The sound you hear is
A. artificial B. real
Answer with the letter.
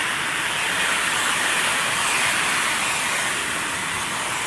B